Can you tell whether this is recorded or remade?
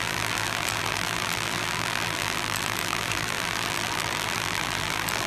remade